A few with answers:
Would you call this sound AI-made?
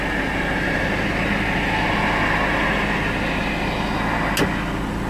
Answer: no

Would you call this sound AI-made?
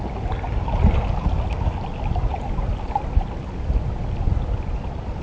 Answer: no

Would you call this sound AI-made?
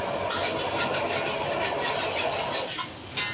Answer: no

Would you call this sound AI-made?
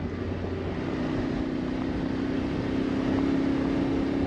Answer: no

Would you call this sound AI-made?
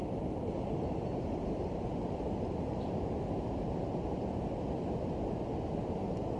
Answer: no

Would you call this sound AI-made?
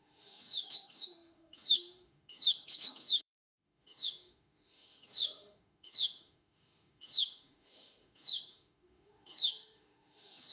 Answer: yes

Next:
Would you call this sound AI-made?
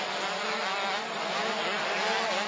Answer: no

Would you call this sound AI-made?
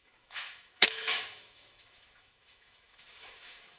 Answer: yes